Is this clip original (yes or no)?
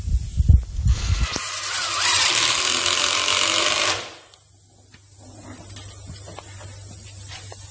yes